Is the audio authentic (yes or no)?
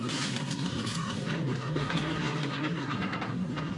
no